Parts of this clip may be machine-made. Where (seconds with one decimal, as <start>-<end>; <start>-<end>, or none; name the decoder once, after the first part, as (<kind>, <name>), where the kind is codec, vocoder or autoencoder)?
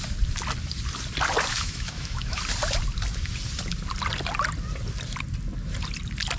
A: 1.5-2.4 (autoencoder, DAC-VAE)